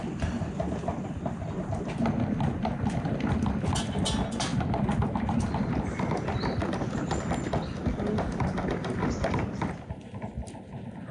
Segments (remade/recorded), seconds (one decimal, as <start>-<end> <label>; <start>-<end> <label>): 0.0-11.1 recorded

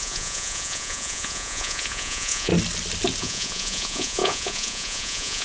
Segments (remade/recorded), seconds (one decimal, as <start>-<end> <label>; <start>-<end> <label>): 0.0-2.5 remade; 2.5-3.2 recorded; 3.2-5.4 remade

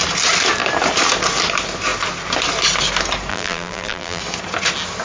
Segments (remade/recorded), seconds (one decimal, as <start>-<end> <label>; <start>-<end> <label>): 0.0-3.3 recorded; 3.3-4.2 remade; 4.2-5.0 recorded

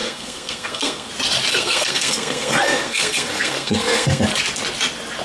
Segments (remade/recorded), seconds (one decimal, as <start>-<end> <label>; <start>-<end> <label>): 0.0-1.1 remade; 1.1-1.5 recorded; 1.5-4.2 remade; 4.2-5.2 recorded

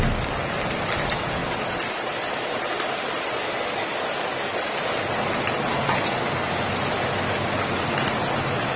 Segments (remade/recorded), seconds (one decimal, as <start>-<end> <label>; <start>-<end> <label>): 0.0-8.8 recorded

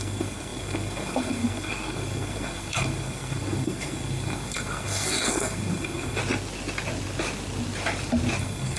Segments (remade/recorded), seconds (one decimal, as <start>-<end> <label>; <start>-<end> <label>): 0.0-6.2 remade; 6.2-8.4 recorded; 8.4-8.8 remade